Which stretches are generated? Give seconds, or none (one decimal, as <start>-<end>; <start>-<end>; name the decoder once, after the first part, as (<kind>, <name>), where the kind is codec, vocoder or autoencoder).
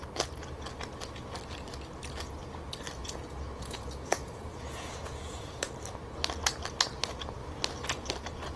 3.0-5.7 (vocoder, Vocos)